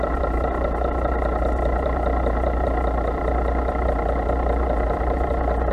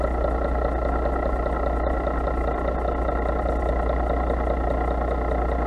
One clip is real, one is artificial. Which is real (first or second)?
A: second